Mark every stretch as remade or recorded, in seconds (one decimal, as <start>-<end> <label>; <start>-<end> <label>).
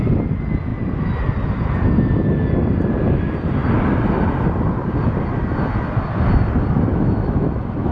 0.0-6.9 recorded; 6.9-7.9 remade